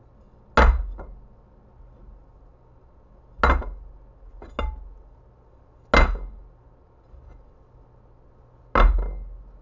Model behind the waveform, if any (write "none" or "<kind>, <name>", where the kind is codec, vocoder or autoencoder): none